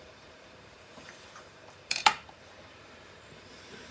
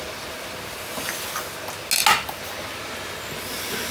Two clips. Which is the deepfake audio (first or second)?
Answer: first